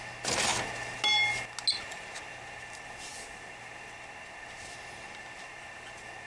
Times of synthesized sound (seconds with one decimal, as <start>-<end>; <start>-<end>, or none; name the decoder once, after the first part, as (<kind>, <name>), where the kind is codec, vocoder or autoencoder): none